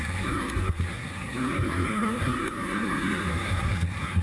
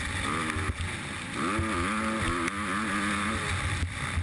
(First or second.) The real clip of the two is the second